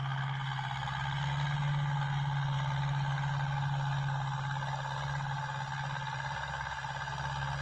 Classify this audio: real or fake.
real